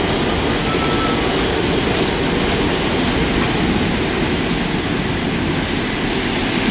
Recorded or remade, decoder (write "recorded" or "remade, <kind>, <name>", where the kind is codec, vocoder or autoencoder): recorded